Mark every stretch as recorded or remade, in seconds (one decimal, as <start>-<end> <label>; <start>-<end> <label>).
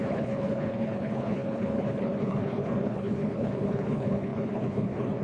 0.0-5.2 remade